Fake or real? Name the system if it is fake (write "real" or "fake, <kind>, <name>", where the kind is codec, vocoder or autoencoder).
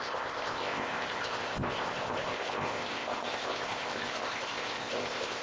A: fake, codec, ZipCodec